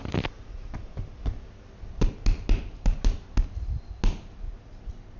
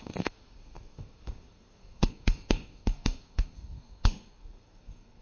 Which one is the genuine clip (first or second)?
first